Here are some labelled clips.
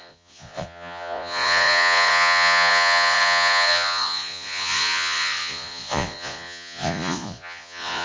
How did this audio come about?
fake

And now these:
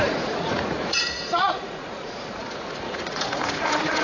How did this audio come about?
fake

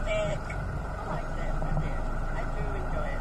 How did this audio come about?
real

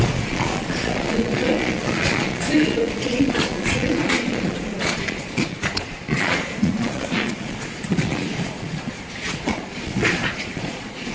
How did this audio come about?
fake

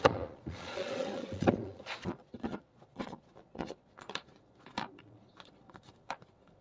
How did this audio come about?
fake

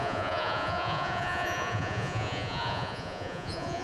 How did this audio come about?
fake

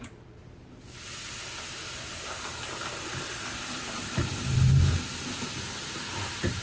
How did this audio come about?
real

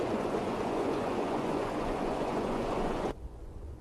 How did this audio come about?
fake